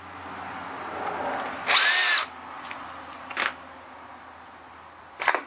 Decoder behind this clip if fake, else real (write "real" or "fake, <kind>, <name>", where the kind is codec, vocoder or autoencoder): real